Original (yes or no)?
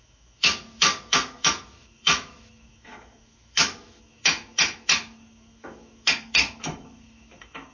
no